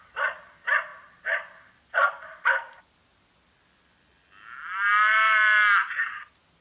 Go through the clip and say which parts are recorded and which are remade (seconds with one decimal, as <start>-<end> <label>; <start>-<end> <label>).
0.0-0.9 recorded; 0.9-2.8 remade; 2.8-6.6 recorded